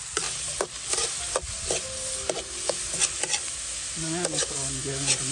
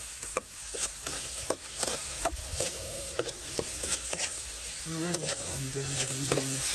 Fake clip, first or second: second